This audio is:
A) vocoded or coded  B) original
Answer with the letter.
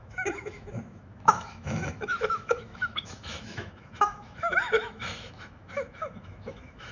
A